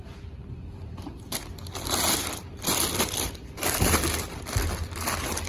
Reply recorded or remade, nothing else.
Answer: recorded